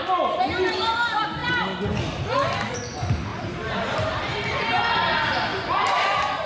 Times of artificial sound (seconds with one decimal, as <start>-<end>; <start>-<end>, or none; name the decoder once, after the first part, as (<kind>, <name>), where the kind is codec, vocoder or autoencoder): 3.3-4.8 (vocoder, BigVGAN v2); 5.5-6.5